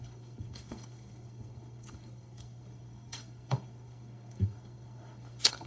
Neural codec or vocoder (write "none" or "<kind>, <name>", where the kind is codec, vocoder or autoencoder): codec, SNAC